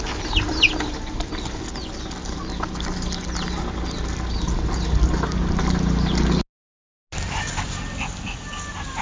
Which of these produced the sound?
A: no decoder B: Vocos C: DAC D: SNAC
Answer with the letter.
A